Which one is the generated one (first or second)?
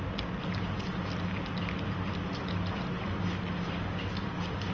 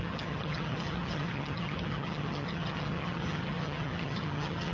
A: second